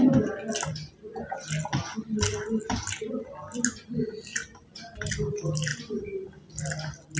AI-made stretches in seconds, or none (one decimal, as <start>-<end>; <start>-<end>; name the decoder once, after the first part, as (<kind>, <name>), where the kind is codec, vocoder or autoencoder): none